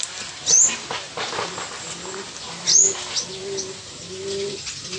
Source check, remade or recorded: recorded